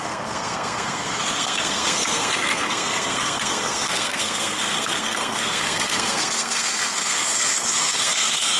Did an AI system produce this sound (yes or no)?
yes